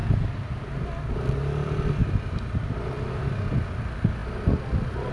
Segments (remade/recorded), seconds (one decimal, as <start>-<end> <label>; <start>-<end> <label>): 0.0-5.1 recorded